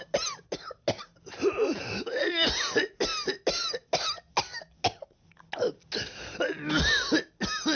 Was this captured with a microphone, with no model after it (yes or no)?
yes